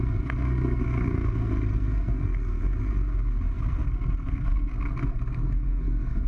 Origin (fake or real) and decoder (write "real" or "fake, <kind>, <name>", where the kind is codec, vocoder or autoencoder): fake, codec, SNAC